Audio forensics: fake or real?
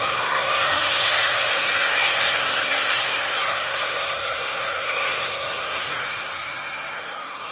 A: fake